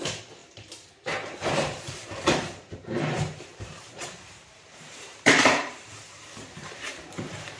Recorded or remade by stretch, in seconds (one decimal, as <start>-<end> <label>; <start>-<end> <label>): 0.0-7.6 remade